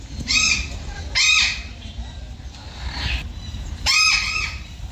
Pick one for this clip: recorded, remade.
remade